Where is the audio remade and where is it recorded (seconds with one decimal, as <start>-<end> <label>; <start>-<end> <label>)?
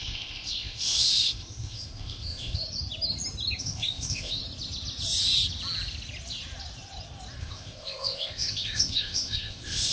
0.0-2.6 remade; 2.6-3.6 recorded; 3.6-4.4 remade; 4.4-7.4 recorded; 7.4-9.9 remade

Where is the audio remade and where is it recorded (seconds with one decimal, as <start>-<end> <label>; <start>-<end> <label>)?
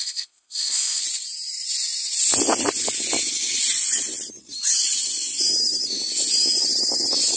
0.0-1.0 remade; 1.0-7.4 recorded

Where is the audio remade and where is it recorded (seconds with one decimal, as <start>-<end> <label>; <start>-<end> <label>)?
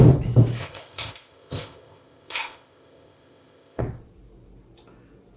0.0-0.6 recorded; 0.6-3.8 remade; 3.8-5.4 recorded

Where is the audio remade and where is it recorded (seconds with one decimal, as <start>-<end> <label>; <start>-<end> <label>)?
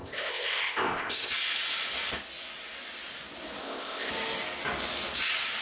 0.0-1.3 remade; 1.3-3.6 recorded; 3.6-4.1 remade; 4.1-5.6 recorded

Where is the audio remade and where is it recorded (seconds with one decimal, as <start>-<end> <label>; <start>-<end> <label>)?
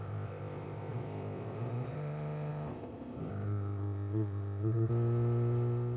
0.0-4.9 remade; 4.9-6.0 recorded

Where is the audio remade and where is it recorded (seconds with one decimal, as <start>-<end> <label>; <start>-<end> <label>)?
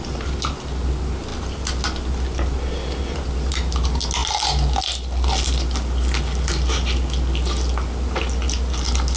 0.0-9.2 recorded